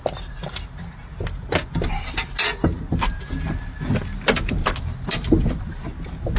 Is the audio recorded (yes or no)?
yes